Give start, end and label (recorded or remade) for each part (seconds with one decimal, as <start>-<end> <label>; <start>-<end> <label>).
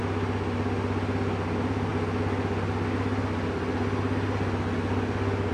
0.0-5.5 recorded